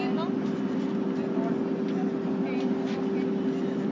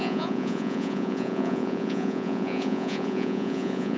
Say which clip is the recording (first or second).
first